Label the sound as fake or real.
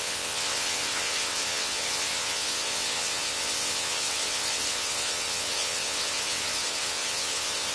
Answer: fake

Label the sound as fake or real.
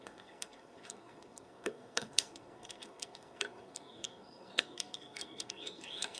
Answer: fake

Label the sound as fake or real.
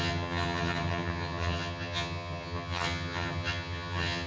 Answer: fake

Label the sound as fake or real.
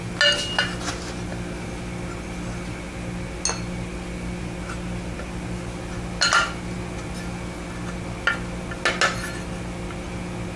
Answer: real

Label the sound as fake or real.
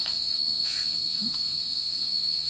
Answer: fake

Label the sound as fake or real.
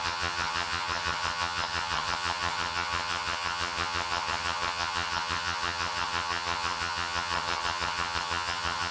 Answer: fake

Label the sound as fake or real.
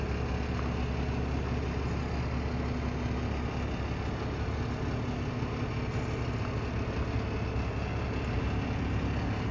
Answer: real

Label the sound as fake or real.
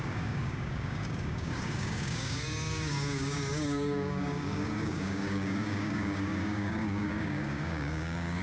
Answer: fake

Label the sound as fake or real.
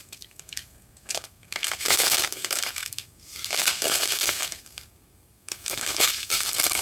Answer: fake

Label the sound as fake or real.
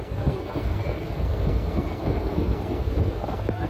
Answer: fake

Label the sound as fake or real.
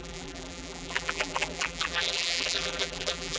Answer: fake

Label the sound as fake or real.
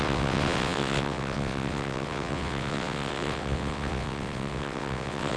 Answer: fake